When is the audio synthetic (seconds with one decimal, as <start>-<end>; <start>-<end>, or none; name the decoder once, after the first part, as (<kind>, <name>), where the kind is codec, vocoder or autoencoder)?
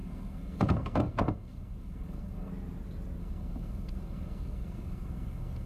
0.0-2.5 (codec, SNAC); 3.2-5.7